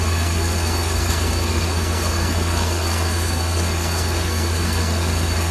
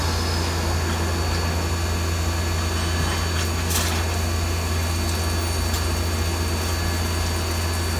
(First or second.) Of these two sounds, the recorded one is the second